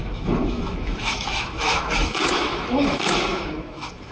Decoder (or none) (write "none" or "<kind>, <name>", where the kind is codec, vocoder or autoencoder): autoencoder, DAC-VAE